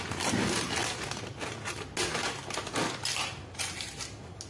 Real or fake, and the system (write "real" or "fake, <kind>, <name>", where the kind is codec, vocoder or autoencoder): real